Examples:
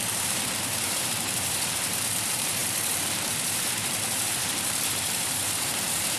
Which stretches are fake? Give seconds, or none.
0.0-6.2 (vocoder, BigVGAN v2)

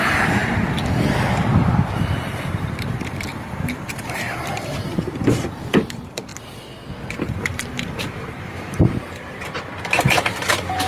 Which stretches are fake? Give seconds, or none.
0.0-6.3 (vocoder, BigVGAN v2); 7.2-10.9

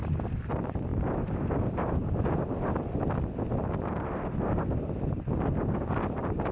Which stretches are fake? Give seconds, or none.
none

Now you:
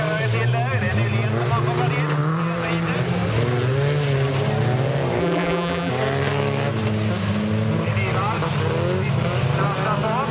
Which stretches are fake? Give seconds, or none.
5.2-5.9 (vocoder, BigVGAN v2)

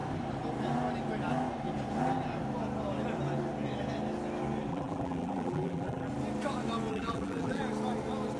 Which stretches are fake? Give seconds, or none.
4.7-6.1 (vocoder, BigVGAN v2); 6.9-7.6

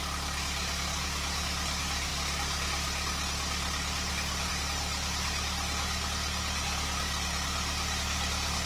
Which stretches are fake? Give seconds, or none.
none